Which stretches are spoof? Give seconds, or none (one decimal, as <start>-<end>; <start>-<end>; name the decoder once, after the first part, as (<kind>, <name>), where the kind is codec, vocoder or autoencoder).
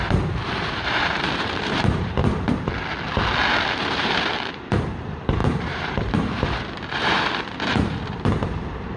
0.0-2.2 (vocoder, BigVGAN v2); 3.8-9.0